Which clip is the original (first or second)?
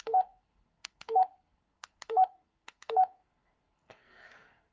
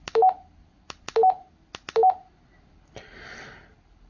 second